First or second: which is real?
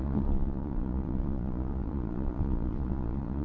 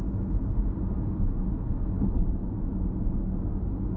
second